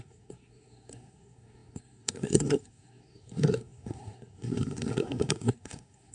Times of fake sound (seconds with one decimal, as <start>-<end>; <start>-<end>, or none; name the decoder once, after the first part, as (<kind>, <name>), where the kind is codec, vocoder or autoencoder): 0.0-6.1 (codec, SNAC)